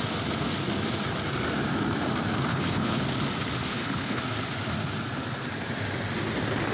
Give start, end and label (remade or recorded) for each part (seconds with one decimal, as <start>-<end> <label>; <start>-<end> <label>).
0.0-2.5 recorded; 2.5-3.0 remade; 3.0-3.7 recorded; 3.7-4.2 remade; 4.2-6.7 recorded